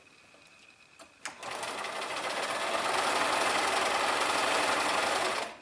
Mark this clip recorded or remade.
recorded